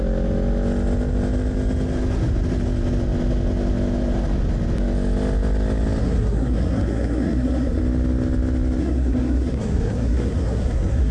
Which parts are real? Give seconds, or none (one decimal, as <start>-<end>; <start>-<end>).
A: 0.0-6.0; 7.8-8.8